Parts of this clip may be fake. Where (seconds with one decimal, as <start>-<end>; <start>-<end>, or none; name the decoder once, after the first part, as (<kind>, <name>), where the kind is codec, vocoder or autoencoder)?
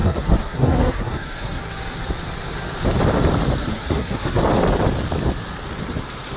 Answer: 0.0-1.6 (codec, SNAC); 3.6-4.4